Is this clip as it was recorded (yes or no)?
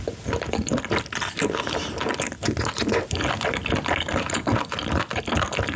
yes